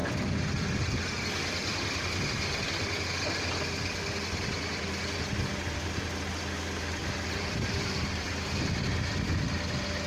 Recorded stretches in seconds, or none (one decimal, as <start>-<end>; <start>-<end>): 0.0-7.0; 8.6-10.1

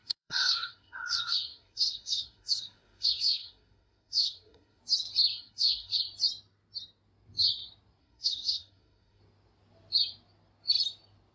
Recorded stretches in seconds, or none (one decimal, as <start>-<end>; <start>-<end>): 4.8-5.3; 6.0-8.0; 9.2-11.3

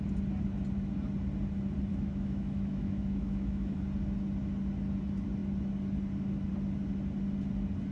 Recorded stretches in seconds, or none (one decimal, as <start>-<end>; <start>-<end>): 0.0-1.9; 3.8-7.9

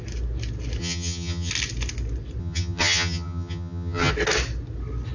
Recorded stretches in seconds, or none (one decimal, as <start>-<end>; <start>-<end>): 0.0-0.8; 1.5-2.4; 4.1-5.1